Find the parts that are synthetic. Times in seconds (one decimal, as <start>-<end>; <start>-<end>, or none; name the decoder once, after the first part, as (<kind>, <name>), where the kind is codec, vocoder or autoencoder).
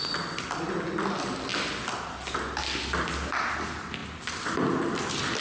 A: none